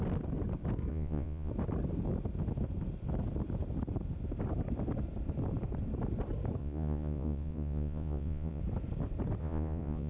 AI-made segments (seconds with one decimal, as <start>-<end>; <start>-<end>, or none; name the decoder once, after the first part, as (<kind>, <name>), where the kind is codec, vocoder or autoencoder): 0.9-1.5 (vocoder, Vocos); 6.6-8.6; 9.4-10.1